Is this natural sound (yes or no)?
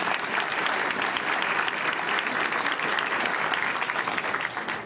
yes